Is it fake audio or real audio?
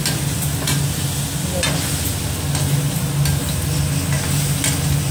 real